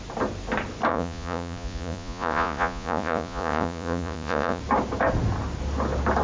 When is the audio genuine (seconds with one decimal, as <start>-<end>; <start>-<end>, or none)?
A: 0.0-0.9; 4.6-6.2